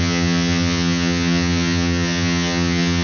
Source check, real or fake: fake